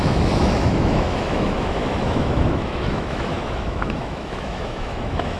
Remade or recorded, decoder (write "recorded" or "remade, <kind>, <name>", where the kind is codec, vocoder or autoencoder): remade, autoencoder, DAC-VAE